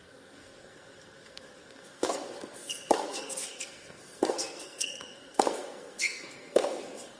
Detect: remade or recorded remade